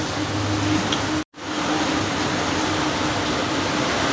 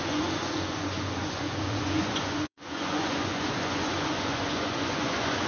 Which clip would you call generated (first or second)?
second